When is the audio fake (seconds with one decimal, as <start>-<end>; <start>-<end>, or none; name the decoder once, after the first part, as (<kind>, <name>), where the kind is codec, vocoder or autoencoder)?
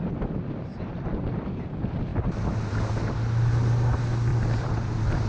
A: 0.7-1.4 (vocoder, BigVGAN v2); 4.3-5.3